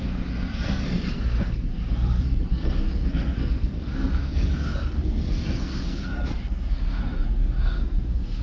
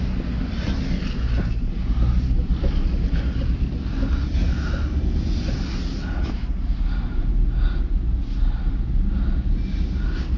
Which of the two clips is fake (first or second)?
first